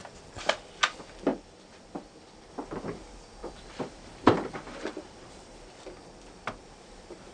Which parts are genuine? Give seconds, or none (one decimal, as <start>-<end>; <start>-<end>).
0.0-1.3; 2.5-3.4; 5.7-7.3